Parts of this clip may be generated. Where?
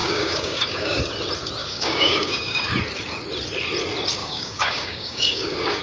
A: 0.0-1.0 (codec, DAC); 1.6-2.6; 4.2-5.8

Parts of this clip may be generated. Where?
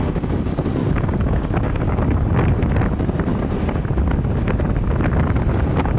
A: 0.8-2.0 (codec, DAC)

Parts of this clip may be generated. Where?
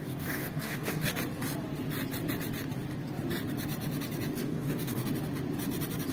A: 0.0-1.1 (codec, DAC); 4.4-5.0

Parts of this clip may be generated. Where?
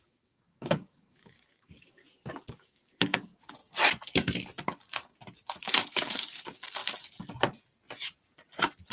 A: 0.0-2.0 (codec, DAC); 2.5-3.6; 5.6-6.8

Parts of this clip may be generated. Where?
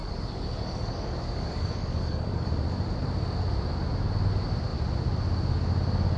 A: 0.0-2.5 (codec, DAC)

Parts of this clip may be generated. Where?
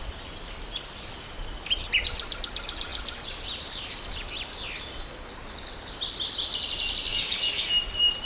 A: 7.1-7.7 (codec, DAC)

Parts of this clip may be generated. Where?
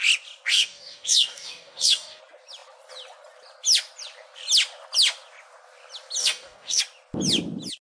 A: 0.5-2.2 (codec, DAC); 6.2-6.8